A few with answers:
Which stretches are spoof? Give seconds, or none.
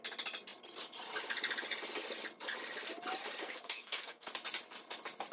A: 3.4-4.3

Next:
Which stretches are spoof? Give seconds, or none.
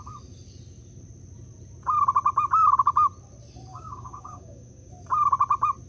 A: 3.7-4.9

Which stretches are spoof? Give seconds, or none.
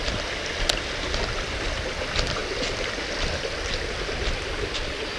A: none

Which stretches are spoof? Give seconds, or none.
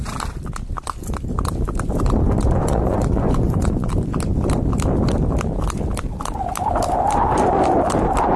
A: 2.6-3.9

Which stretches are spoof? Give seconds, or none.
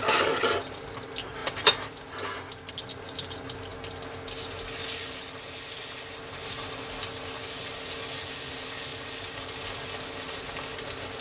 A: 1.4-2.7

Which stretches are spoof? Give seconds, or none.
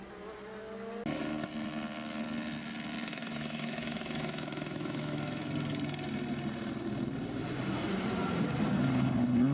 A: 3.1-5.5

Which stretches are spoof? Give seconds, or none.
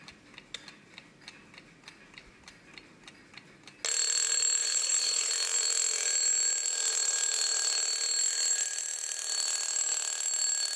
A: 4.6-5.3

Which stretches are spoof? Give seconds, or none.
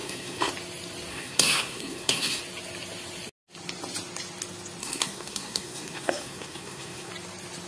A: 0.0-0.5; 1.1-2.4; 4.8-7.1